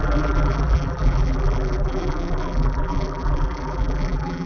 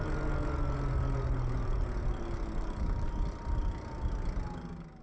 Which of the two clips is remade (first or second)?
first